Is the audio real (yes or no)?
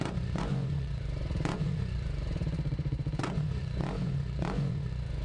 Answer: no